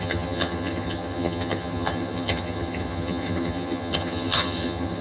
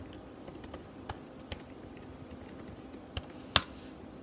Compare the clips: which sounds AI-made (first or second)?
first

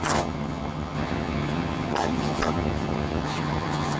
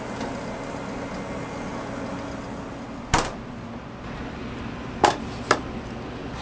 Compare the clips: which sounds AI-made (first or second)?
first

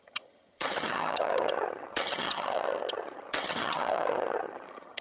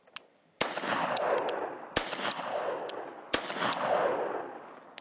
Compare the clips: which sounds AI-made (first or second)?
first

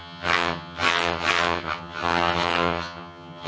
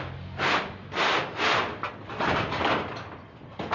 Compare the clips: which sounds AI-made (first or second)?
first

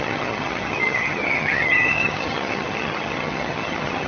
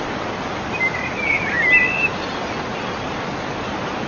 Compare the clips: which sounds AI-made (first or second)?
first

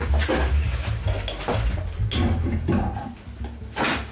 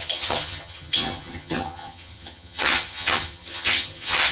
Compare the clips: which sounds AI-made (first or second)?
second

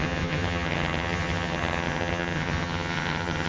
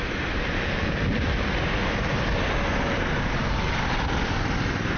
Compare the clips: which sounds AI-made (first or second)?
first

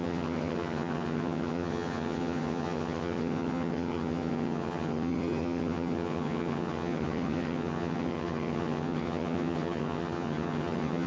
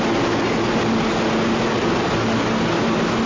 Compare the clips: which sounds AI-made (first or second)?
first